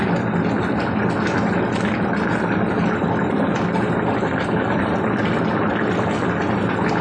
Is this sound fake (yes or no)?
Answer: no